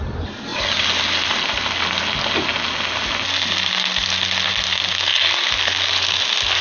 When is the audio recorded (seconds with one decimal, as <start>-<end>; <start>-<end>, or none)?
0.0-6.6